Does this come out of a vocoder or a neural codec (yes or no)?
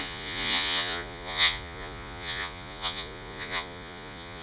yes